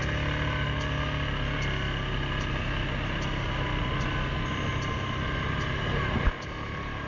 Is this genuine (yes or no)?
yes